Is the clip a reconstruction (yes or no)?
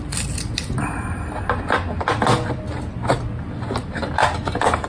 no